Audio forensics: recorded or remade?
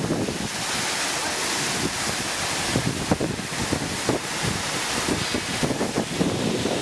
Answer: recorded